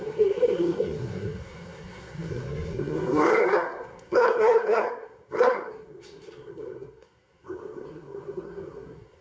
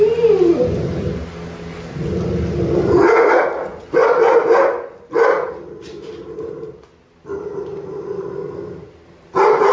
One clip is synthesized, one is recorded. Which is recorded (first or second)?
second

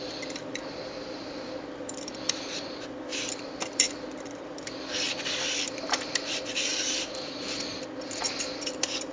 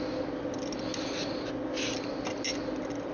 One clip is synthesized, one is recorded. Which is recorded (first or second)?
second